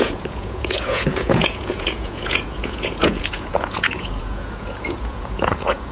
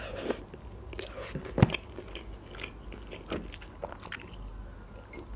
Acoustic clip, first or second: second